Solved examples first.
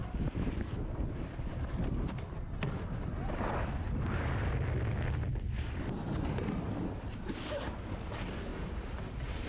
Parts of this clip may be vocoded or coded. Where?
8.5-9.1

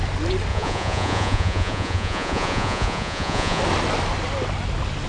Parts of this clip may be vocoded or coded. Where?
0.5-3.6

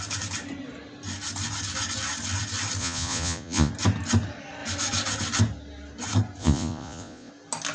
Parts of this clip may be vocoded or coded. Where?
2.8-3.7; 6.4-7.3

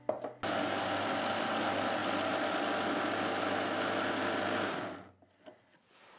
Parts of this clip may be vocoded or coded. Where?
none